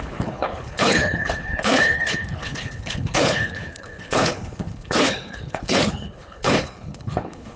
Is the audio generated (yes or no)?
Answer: yes